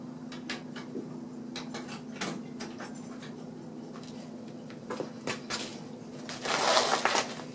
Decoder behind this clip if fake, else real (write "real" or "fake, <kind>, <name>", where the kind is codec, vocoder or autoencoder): real